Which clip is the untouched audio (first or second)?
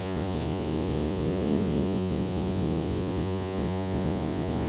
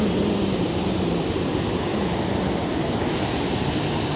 second